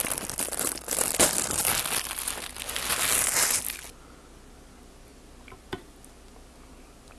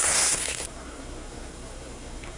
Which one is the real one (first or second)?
first